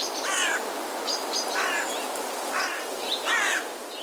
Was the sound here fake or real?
real